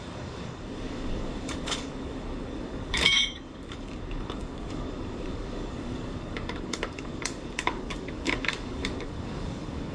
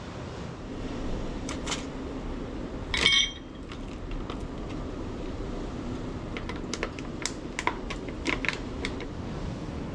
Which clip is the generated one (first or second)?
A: first